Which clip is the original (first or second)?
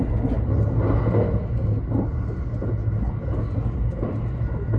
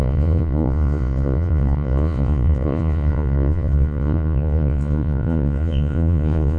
first